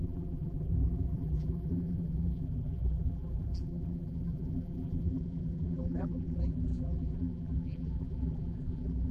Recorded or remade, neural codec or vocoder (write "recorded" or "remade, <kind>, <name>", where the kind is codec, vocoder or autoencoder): remade, vocoder, BigVGAN v2